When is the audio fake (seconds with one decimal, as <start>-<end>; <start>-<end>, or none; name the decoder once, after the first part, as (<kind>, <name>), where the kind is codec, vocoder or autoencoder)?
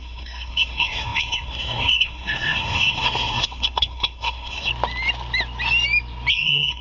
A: 0.0-4.7 (codec, SNAC); 6.3-6.8